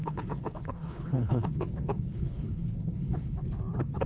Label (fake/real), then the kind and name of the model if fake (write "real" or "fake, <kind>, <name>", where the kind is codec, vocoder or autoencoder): fake, codec, HILCodec